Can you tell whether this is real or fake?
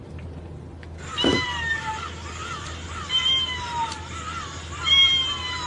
real